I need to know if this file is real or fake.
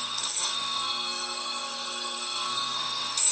fake